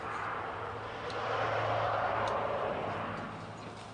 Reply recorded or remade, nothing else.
recorded